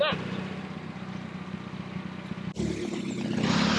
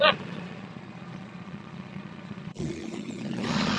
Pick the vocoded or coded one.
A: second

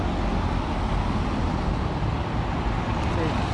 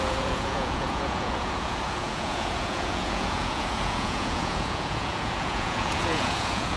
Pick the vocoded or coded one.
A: second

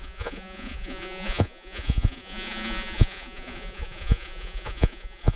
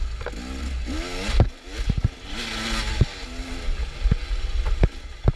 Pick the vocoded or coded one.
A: first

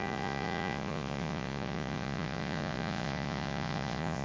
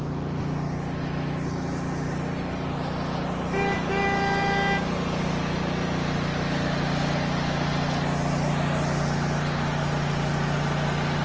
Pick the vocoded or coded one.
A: first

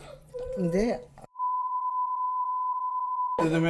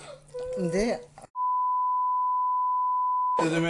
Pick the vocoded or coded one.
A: first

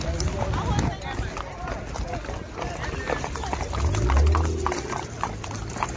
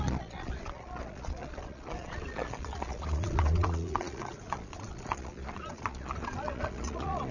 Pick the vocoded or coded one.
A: second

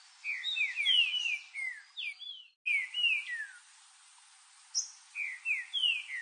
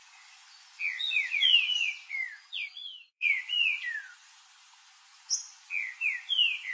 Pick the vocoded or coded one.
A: second